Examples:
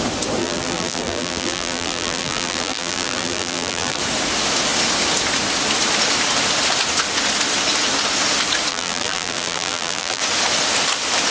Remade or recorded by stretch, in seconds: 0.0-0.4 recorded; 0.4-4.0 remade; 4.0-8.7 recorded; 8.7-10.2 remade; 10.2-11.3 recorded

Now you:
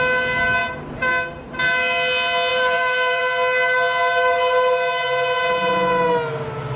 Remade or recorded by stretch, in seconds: 0.0-2.5 recorded; 2.5-3.2 remade; 3.2-6.8 recorded

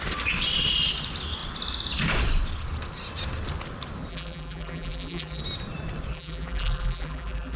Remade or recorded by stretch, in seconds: 0.0-4.1 recorded; 4.1-5.4 remade; 5.4-6.1 recorded; 6.1-7.6 remade

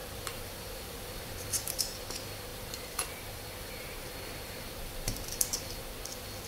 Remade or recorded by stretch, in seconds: 0.0-1.8 remade; 1.8-2.5 recorded; 2.5-5.8 remade; 5.8-6.5 recorded

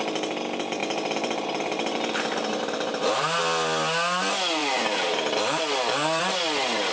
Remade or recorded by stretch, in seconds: 0.0-0.8 recorded; 0.8-3.4 remade; 3.4-6.9 recorded

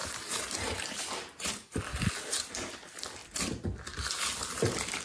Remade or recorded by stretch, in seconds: 0.0-1.8 remade; 1.8-5.0 recorded

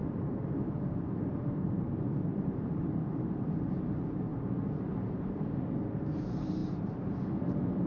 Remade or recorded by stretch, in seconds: 0.0-4.3 remade; 4.3-5.0 recorded; 5.0-7.9 remade

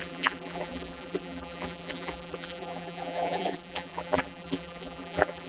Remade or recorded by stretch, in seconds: 0.0-5.5 remade